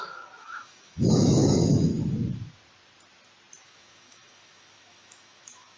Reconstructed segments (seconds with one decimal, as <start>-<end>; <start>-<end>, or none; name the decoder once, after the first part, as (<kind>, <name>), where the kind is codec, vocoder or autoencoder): 0.0-1.9 (autoencoder, DAC-VAE); 3.6-5.8